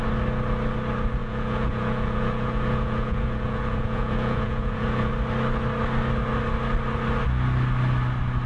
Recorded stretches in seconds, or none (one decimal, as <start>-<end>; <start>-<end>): 0.0-1.2; 5.1-8.5